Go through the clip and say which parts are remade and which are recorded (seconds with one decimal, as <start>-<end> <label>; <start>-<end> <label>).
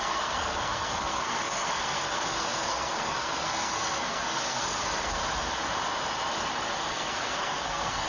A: 0.0-5.2 remade; 5.2-6.9 recorded; 6.9-8.1 remade